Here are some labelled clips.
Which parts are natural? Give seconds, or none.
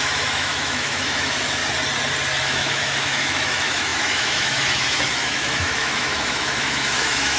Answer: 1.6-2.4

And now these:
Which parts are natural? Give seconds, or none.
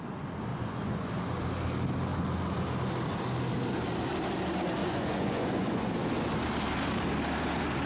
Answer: 0.0-0.5; 1.2-4.8; 5.9-7.9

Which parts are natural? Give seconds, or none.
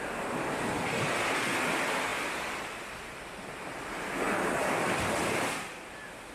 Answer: 0.0-6.3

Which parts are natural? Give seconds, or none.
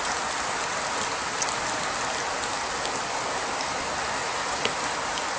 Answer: 0.0-4.2; 4.7-5.4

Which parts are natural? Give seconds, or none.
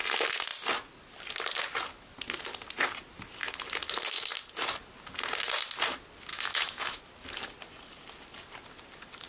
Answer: 0.0-6.3; 7.0-9.3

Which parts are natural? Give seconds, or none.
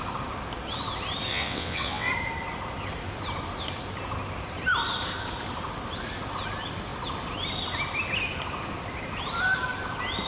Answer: 0.0-1.3; 2.1-10.3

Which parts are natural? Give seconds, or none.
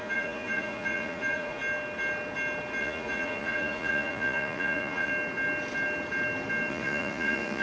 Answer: 1.6-2.8; 5.1-6.7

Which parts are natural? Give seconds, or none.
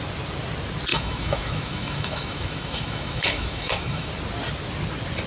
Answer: 0.0-0.9; 4.1-5.3